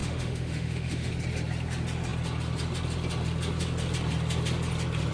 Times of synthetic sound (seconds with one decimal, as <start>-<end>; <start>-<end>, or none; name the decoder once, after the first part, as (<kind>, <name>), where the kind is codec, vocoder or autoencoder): 0.0-1.1 (autoencoder, DAC-VAE)

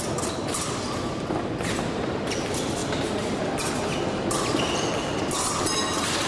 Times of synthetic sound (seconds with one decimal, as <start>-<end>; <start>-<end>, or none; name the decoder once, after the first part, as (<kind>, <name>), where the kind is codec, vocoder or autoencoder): none

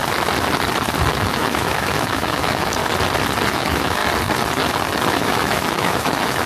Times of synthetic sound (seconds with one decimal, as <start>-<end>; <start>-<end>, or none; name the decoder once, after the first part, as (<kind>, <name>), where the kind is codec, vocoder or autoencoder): 1.1-2.8 (autoencoder, DAC-VAE); 3.5-4.0; 5.1-6.5

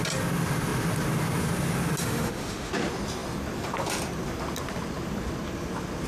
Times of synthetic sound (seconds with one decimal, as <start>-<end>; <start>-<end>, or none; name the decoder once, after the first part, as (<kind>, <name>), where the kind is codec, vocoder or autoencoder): 2.0-2.7 (autoencoder, DAC-VAE)

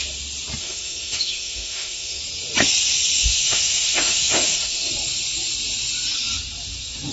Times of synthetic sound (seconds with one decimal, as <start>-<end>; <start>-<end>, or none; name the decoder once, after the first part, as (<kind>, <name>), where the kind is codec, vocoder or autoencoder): 0.6-2.2 (autoencoder, DAC-VAE); 3.2-4.9